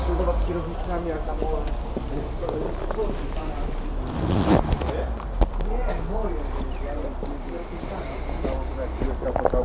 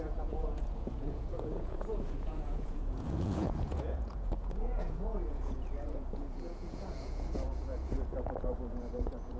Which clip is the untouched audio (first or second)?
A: first